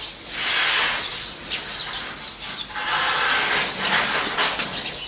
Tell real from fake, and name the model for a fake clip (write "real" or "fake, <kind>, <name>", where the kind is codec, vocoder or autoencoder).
real